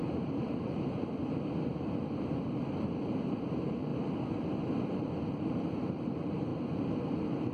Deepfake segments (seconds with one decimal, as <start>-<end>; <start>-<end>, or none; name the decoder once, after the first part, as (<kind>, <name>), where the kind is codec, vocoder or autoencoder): 0.0-1.2 (vocoder, BigVGAN v2); 2.7-3.9; 4.9-6.5; 7.1-7.5